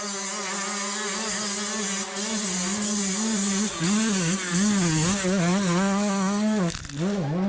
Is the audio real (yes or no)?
yes